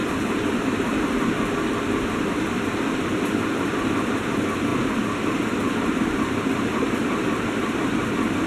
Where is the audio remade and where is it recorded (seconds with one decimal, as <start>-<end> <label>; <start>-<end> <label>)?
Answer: 0.0-4.3 remade; 4.3-4.7 recorded; 4.7-7.5 remade; 7.5-8.5 recorded